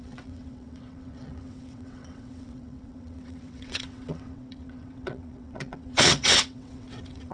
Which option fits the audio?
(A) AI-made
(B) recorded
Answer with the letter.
A